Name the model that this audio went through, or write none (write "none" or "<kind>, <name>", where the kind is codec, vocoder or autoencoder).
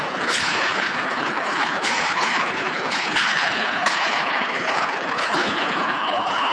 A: codec, HILCodec